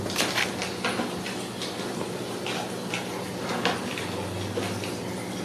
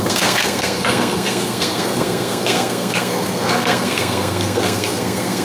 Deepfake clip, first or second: second